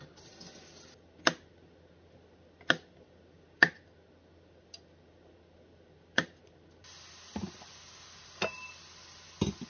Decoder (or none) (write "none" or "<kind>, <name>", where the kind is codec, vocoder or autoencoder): none